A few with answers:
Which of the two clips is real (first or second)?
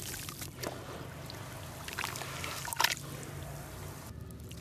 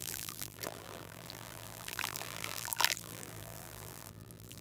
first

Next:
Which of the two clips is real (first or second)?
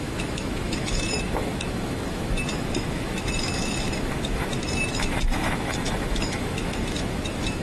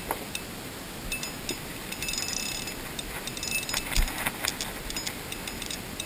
second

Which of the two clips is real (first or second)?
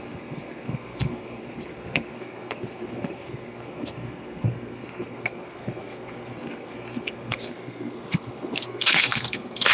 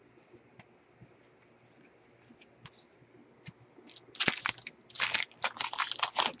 second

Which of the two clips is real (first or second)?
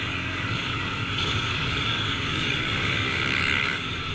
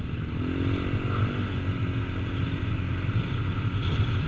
second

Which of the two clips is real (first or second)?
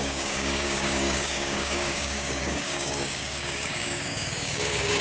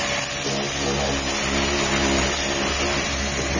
second